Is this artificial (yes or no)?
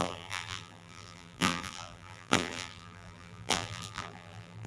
yes